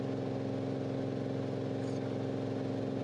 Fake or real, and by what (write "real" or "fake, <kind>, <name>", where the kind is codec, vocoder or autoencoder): real